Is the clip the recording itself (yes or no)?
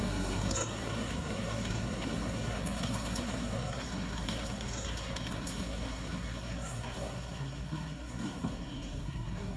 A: no